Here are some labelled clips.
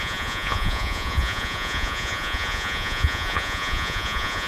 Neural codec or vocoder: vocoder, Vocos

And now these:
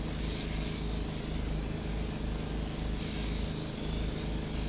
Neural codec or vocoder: none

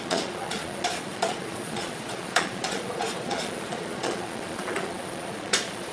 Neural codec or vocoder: vocoder, Vocos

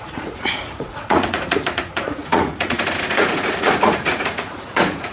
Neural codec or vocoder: vocoder, Vocos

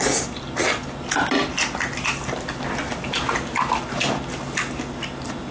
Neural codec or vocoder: none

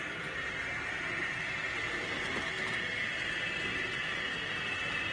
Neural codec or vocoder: none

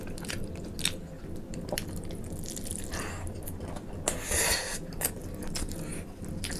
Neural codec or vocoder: none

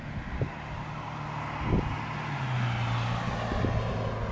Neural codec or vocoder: none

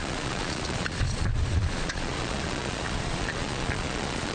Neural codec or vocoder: vocoder, Vocos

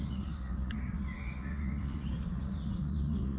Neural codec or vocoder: vocoder, Vocos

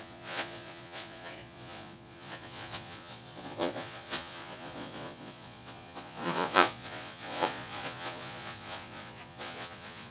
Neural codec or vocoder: vocoder, Vocos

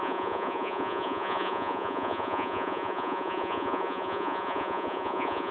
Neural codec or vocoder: vocoder, Vocos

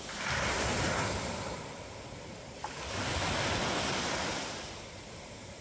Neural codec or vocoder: none